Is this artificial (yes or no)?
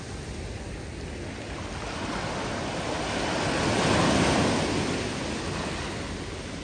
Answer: no